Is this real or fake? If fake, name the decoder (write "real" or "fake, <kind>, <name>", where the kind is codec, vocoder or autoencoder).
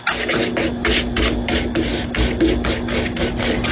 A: real